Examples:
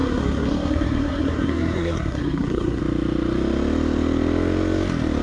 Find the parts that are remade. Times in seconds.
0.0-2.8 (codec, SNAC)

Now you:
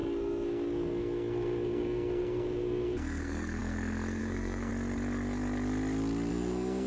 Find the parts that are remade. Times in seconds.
0.0-4.7 (codec, SNAC); 6.3-6.9

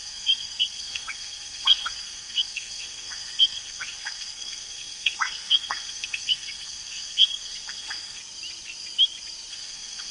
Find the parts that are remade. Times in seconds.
0.0-8.2 (codec, SNAC); 9.5-10.1

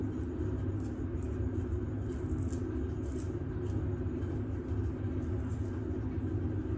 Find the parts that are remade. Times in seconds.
none

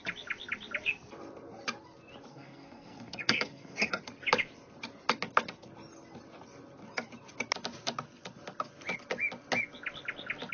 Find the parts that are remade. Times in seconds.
2.3-4.0 (codec, SNAC)